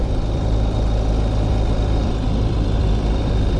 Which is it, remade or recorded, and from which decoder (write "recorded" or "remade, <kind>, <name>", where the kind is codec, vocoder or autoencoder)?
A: remade, vocoder, BigVGAN v2